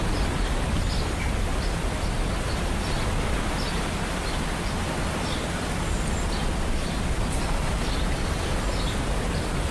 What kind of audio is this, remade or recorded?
recorded